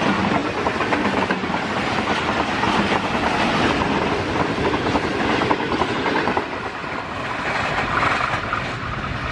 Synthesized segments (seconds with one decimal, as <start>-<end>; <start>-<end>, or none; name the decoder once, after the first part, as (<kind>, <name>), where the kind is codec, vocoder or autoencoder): none